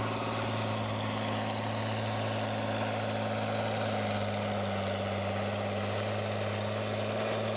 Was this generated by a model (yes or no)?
no